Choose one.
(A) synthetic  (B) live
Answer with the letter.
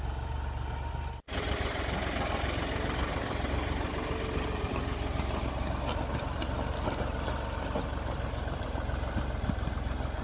B